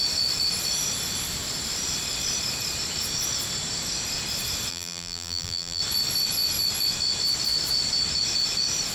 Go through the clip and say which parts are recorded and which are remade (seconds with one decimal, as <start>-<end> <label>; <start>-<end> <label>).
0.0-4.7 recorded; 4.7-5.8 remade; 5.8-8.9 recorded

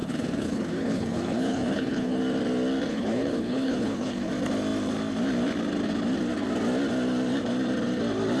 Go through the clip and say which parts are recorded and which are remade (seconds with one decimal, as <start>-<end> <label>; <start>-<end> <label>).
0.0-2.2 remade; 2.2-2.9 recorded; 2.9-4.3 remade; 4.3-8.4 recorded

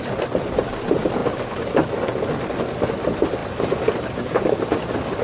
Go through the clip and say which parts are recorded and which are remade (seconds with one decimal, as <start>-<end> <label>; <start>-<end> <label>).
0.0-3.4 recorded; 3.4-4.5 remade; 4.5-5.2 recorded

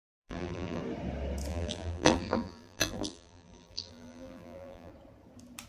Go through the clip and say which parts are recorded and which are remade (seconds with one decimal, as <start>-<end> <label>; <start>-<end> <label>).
0.0-0.8 remade; 0.8-1.5 recorded; 1.5-4.9 remade; 4.9-5.7 recorded

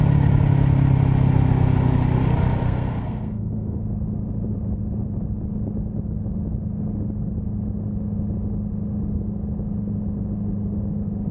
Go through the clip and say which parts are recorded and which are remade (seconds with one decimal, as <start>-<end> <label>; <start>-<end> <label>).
0.0-2.6 recorded; 2.6-3.8 remade; 3.8-11.3 recorded

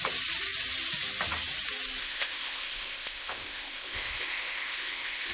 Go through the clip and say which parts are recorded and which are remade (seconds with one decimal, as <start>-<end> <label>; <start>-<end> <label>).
0.0-2.0 recorded; 2.0-5.3 remade